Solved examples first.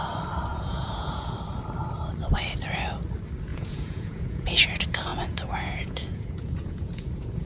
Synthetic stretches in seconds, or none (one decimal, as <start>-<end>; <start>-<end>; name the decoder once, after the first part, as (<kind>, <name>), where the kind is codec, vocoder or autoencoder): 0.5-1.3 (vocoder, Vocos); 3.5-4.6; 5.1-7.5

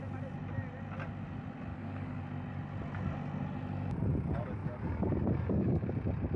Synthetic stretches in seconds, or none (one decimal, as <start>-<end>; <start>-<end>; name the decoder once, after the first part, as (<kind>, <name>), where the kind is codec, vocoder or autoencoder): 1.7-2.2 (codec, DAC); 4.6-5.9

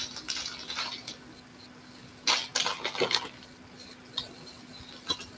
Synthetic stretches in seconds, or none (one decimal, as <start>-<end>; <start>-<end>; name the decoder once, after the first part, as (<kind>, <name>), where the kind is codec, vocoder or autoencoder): none

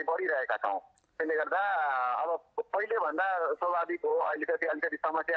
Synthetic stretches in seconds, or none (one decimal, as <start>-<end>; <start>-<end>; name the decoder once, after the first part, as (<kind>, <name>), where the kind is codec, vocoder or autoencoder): 4.1-4.7 (vocoder, Vocos)

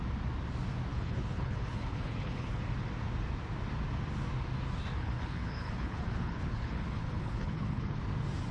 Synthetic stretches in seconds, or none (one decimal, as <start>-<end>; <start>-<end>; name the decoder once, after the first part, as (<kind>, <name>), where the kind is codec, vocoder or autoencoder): 0.9-2.6 (codec, HILCodec); 5.0-8.0